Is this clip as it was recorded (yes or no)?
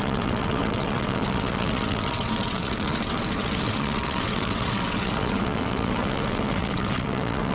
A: no